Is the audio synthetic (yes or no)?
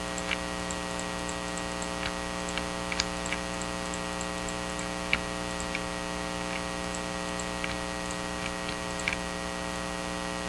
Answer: no